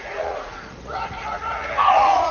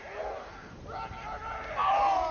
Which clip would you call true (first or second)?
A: second